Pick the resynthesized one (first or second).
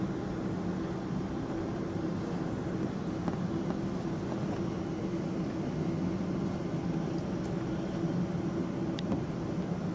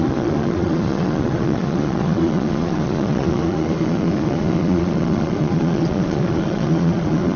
second